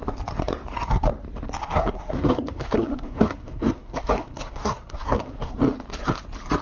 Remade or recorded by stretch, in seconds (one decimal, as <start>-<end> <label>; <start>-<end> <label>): 0.0-1.6 recorded; 1.6-5.5 remade; 5.5-6.6 recorded